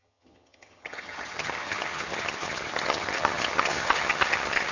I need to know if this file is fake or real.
fake